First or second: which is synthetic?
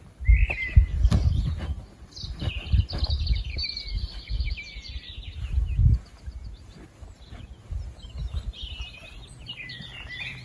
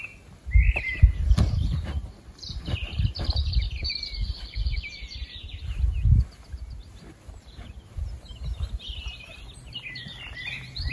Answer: second